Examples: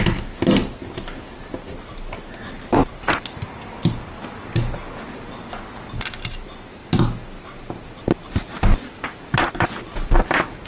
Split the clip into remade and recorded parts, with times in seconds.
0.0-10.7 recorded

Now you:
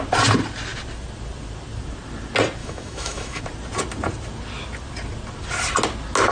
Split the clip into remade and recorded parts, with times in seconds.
0.0-2.6 recorded; 2.6-3.4 remade; 3.4-6.3 recorded

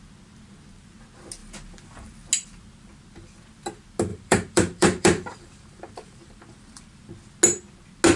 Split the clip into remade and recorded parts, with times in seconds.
0.0-4.1 recorded; 4.1-6.8 remade; 6.8-8.2 recorded

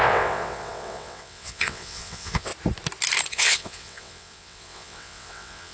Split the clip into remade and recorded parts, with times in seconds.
0.0-2.5 remade; 2.5-3.3 recorded; 3.3-5.7 remade